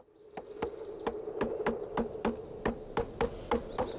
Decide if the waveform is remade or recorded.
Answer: recorded